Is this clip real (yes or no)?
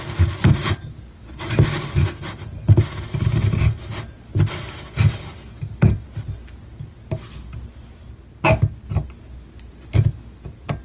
yes